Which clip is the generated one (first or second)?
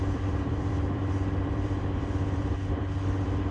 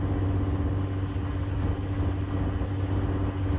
first